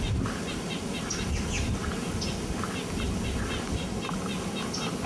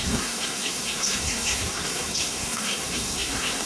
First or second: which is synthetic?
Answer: second